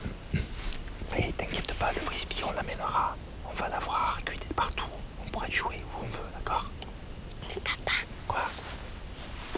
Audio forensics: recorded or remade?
recorded